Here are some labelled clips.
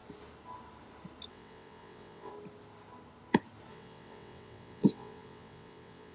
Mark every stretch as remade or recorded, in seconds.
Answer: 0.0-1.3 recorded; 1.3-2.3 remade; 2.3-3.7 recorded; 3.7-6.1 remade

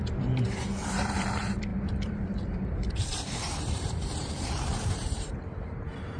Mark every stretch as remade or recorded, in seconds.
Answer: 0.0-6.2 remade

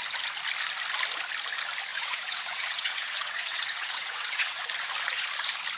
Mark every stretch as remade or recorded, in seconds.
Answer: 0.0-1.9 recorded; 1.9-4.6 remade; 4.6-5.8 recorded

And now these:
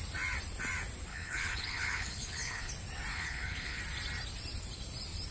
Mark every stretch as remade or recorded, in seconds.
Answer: 0.0-1.1 recorded; 1.1-2.7 remade; 2.7-3.1 recorded; 3.1-3.8 remade; 3.8-5.3 recorded